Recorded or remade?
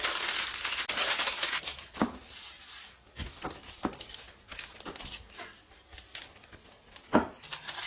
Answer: recorded